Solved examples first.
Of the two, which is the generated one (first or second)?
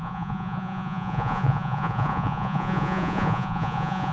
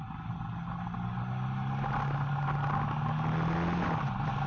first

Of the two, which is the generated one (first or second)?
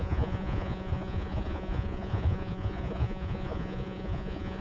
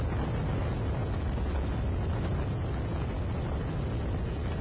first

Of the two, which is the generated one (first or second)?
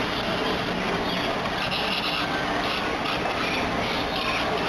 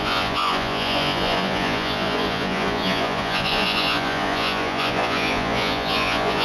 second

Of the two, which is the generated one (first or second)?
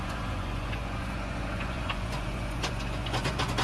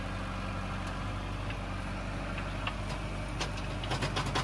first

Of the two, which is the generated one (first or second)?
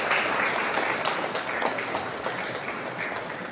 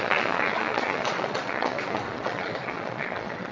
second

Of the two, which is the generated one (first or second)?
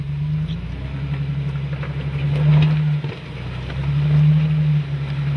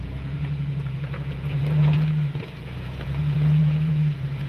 second